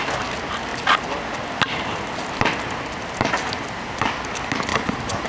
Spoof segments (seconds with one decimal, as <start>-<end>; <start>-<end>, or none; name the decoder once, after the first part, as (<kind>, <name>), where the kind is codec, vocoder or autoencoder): 4.7-5.3 (vocoder, BigVGAN v2)